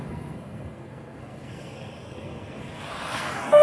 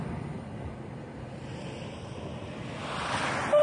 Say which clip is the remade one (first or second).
first